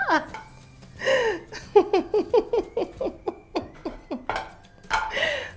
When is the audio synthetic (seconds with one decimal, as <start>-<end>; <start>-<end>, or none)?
3.2-3.8; 5.1-5.6